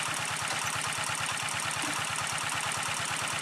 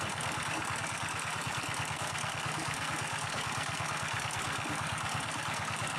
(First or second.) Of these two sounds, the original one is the first